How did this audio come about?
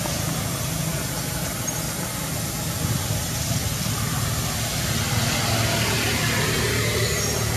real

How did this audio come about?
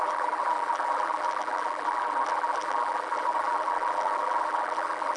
fake